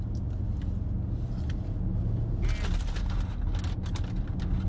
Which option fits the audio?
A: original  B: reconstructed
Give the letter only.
A